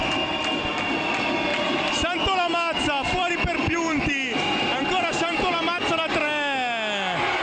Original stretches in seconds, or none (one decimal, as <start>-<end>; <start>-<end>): 0.0-7.4